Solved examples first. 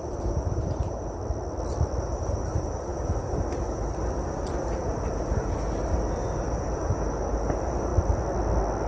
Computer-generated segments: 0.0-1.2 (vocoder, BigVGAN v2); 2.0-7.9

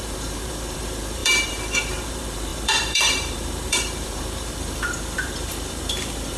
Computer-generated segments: 0.0-6.4 (vocoder, BigVGAN v2)

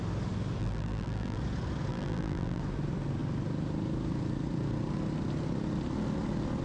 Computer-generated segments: 0.6-1.4 (vocoder, BigVGAN v2); 1.9-2.6

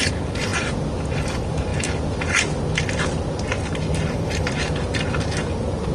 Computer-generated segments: none

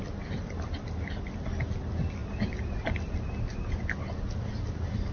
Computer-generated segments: none

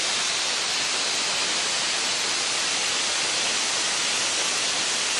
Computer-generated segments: none

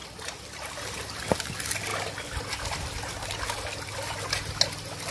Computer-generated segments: none

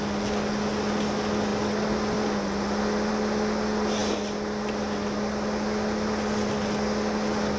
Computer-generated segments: none